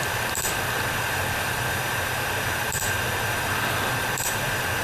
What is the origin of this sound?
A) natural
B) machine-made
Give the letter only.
B